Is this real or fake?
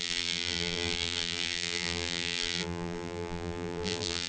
fake